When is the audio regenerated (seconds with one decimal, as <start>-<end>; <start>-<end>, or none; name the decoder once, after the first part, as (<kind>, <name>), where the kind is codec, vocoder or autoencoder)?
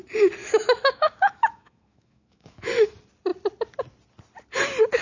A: 0.4-2.9 (autoencoder, DAC-VAE)